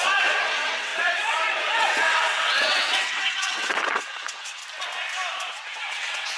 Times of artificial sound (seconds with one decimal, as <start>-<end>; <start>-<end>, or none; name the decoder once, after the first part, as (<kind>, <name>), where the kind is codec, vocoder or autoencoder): 0.0-4.6 (vocoder, WaveNeXt); 5.5-6.4